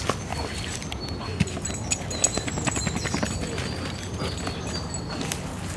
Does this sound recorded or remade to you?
recorded